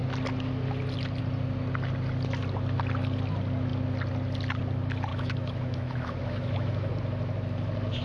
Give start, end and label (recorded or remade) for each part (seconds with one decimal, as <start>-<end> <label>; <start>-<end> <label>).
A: 0.0-5.1 recorded; 5.1-6.9 remade; 6.9-8.0 recorded